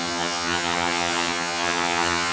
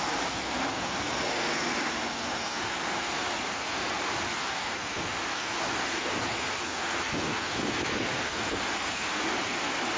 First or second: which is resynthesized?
first